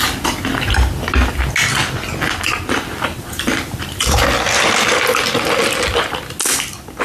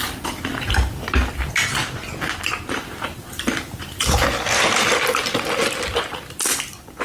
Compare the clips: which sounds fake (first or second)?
second